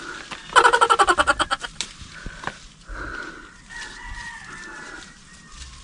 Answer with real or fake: real